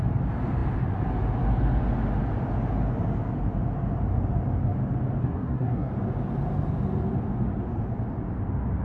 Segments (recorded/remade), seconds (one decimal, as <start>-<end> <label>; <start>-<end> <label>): 0.0-5.2 recorded; 5.2-5.9 remade; 5.9-8.8 recorded